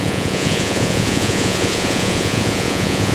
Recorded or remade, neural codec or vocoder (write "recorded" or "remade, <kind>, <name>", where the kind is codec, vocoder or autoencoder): remade, vocoder, Vocos